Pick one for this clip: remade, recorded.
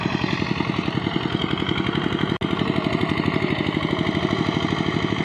recorded